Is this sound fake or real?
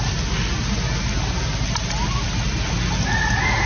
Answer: real